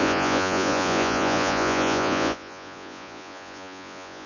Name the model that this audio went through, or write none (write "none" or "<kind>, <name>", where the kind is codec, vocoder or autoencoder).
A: vocoder, Vocos